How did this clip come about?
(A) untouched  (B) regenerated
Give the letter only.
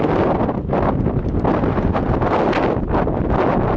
A